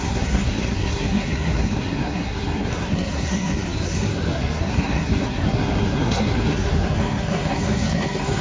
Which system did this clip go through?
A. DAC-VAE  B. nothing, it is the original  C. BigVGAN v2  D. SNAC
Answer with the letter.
D